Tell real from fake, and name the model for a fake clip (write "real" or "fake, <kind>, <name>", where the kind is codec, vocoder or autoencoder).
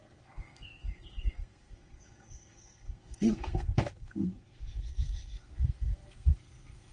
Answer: fake, codec, SNAC